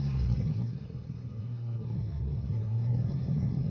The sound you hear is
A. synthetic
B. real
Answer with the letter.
A